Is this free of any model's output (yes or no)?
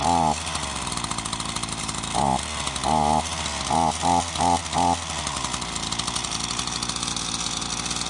yes